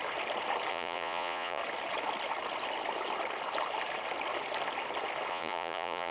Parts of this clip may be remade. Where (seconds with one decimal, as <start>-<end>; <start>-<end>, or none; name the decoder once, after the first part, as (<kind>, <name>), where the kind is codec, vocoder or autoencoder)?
0.7-1.6 (vocoder, Vocos); 5.3-6.1